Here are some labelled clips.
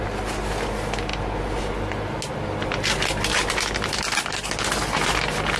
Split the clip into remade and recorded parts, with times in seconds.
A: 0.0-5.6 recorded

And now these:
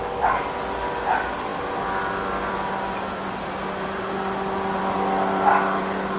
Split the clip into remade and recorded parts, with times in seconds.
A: 0.0-6.2 recorded

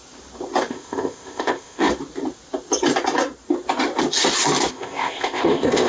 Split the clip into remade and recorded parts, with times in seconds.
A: 0.0-0.7 recorded; 0.7-1.9 remade; 1.9-4.7 recorded; 4.7-5.9 remade

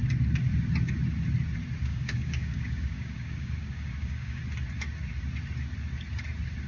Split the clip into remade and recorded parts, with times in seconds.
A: 0.0-1.8 recorded; 1.8-4.4 remade; 4.4-6.7 recorded

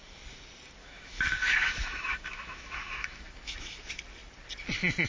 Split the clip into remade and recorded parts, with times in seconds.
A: 0.0-0.8 recorded; 0.8-3.9 remade; 3.9-5.1 recorded

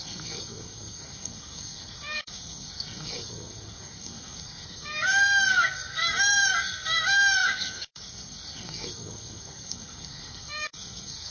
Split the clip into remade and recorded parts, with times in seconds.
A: 0.0-11.3 remade

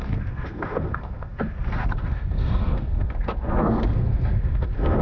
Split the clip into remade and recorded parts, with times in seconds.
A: 0.0-5.0 remade